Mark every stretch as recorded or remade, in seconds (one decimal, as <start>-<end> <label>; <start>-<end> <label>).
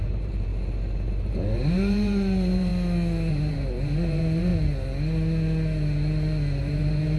0.0-0.5 remade; 0.5-1.1 recorded; 1.1-2.7 remade; 2.7-3.3 recorded; 3.3-4.5 remade; 4.5-6.6 recorded; 6.6-7.2 remade